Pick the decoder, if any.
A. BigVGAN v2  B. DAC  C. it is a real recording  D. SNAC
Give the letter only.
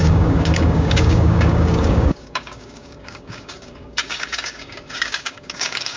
B